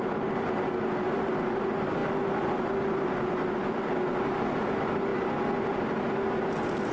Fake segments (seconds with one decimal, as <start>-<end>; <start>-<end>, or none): none

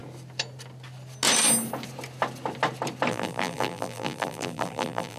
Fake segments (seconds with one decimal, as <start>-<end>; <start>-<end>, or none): 3.1-5.2

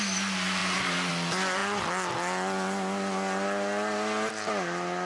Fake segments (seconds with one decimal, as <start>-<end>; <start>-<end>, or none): none

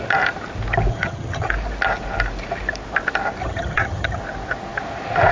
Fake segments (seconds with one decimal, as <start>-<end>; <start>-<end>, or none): 0.9-1.5; 3.4-4.2

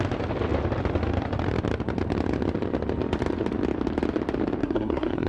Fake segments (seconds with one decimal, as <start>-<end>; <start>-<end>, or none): 4.6-5.3

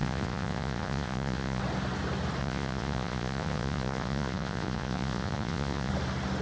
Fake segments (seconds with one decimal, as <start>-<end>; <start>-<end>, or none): 0.0-1.6; 2.4-5.9